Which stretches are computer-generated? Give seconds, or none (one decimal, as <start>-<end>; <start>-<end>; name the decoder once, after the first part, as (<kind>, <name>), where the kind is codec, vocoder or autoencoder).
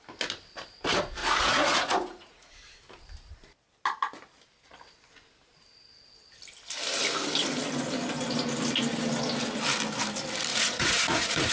1.2-2.5 (vocoder, Vocos); 10.5-11.5